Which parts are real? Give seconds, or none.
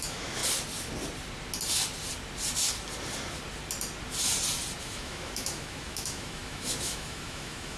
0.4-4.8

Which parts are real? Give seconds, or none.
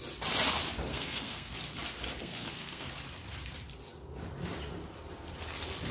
0.0-0.9; 1.5-2.2; 2.9-5.9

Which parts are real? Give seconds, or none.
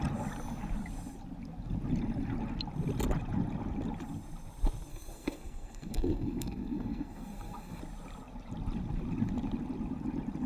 0.0-4.9; 7.8-10.5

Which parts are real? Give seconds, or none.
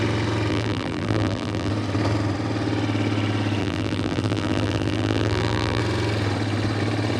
0.0-0.5; 1.7-3.6; 5.8-7.2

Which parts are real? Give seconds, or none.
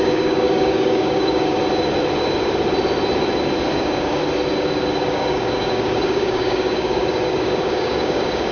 1.6-3.7; 4.2-5.1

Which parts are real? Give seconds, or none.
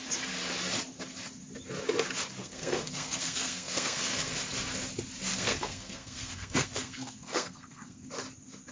0.0-2.4; 4.3-5.3; 8.1-8.7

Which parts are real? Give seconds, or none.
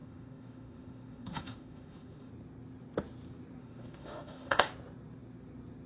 2.3-3.6; 4.7-5.9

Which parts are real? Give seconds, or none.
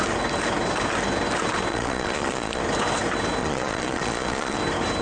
0.0-1.7; 2.6-3.4; 4.6-5.0